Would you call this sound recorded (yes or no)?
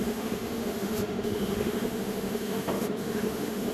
no